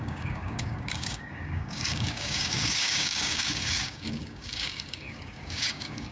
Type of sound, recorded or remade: remade